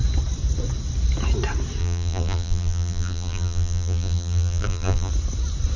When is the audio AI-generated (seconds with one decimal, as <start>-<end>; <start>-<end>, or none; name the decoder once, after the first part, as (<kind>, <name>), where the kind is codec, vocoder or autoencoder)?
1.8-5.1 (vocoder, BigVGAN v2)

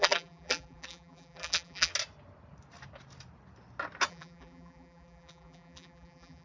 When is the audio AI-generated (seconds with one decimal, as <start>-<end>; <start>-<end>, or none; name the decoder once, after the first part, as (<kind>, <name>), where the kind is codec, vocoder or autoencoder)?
0.0-1.9 (vocoder, BigVGAN v2); 4.1-6.4

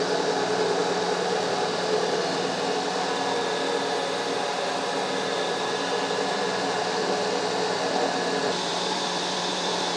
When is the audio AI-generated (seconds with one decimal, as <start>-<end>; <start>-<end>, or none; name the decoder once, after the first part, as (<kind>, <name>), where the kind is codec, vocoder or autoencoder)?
0.0-0.8 (vocoder, BigVGAN v2); 5.3-10.0

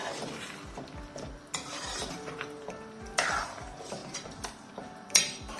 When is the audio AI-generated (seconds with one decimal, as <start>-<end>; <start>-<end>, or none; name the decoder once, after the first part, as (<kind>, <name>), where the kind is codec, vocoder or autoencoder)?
2.1-5.6 (vocoder, BigVGAN v2)